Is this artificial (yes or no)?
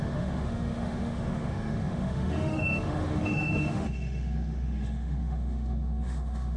yes